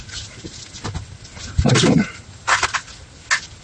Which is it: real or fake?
real